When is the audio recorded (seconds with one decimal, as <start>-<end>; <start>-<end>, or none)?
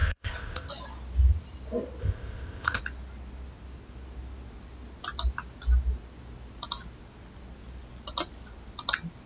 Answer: 0.7-2.0; 2.8-9.3